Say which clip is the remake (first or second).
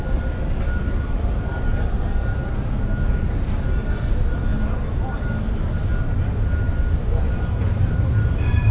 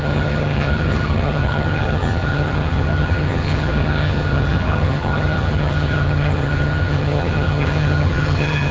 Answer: second